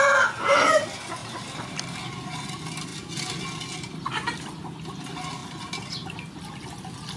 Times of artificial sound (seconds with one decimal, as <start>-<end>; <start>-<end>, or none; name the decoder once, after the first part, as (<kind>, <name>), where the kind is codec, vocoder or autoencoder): none